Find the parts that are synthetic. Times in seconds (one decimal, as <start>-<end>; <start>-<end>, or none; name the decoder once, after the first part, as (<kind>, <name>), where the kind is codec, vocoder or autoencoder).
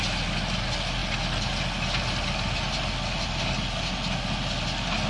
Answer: none